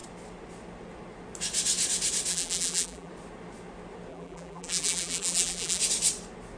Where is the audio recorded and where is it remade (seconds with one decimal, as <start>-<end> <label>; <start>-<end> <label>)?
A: 0.0-2.3 recorded; 2.3-3.1 remade; 3.1-4.1 recorded; 4.1-5.8 remade; 5.8-6.6 recorded